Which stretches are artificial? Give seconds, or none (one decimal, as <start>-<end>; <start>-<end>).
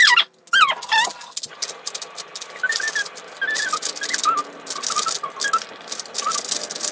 none